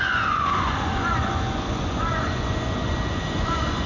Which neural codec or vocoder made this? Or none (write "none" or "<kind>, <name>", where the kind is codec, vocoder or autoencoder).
vocoder, Vocos